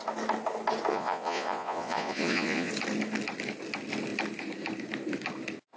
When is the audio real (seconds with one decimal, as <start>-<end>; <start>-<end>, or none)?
0.0-0.9; 2.7-5.8